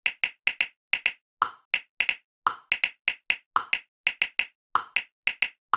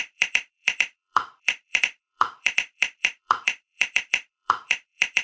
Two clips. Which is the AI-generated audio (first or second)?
second